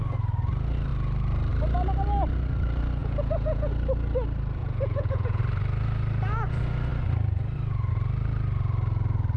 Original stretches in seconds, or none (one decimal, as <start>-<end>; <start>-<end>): 0.0-3.0; 3.7-4.6; 5.4-9.4